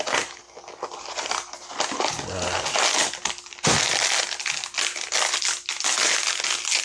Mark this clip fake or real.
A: real